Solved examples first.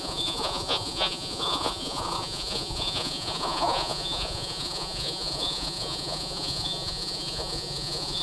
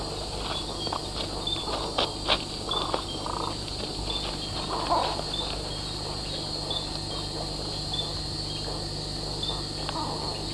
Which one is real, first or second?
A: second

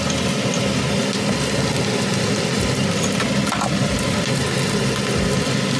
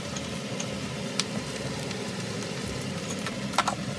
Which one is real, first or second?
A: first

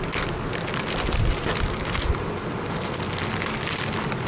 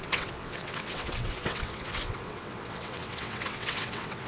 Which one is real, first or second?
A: first